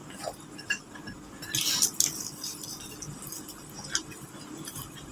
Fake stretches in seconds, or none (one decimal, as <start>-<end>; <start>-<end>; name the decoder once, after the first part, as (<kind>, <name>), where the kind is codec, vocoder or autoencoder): none